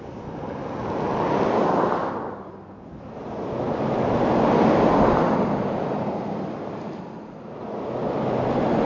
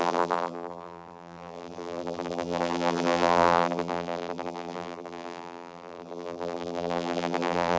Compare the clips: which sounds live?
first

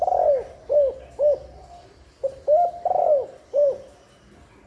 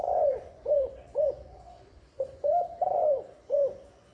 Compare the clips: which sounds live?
first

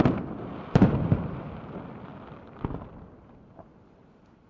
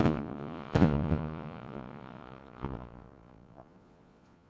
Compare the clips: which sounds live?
first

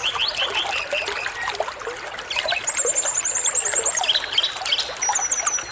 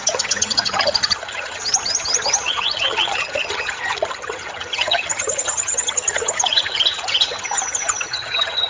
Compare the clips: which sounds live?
first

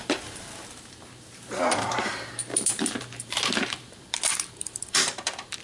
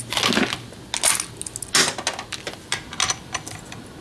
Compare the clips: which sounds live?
second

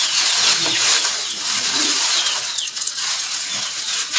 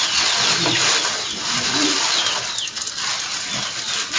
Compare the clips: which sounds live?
second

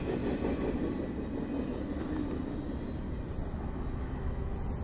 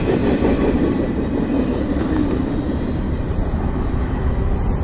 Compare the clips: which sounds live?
first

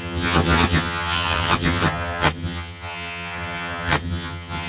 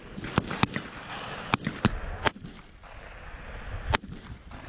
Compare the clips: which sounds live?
second